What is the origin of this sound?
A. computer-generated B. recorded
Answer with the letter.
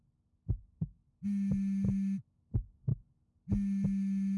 A